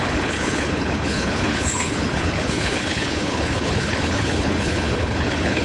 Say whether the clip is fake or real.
fake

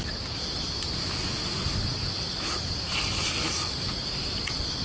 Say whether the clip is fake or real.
real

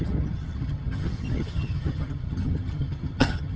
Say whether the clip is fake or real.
fake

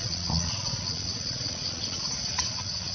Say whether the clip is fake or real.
fake